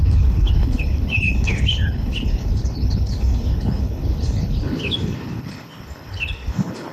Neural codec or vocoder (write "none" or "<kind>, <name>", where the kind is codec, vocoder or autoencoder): codec, HILCodec